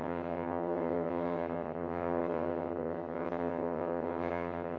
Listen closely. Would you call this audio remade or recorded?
remade